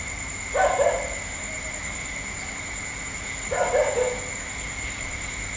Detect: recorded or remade recorded